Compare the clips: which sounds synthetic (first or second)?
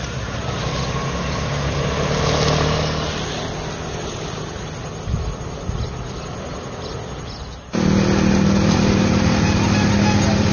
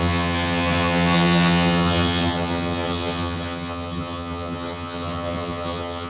second